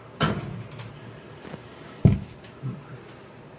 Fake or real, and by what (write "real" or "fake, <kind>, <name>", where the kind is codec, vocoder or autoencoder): real